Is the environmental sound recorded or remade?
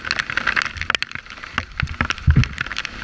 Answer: recorded